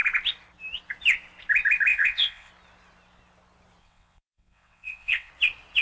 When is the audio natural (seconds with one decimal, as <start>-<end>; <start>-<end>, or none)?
0.0-1.9; 2.5-3.8; 5.3-5.8